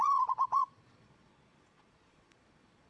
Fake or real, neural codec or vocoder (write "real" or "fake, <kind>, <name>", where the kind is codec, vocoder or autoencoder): fake, vocoder, Vocos